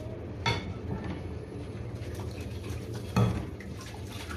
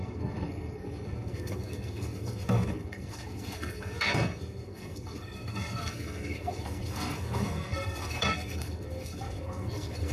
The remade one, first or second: second